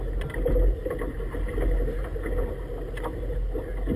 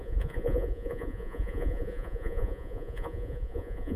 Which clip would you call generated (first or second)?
second